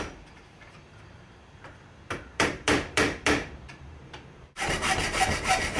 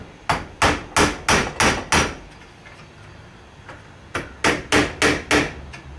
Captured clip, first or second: second